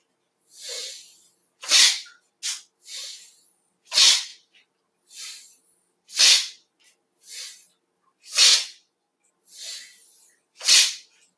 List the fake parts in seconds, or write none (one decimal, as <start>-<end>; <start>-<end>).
8.5-9.3